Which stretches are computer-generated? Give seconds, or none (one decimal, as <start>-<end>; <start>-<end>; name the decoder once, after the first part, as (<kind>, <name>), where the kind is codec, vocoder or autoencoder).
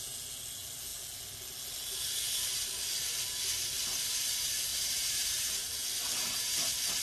4.7-5.7 (vocoder, BigVGAN v2)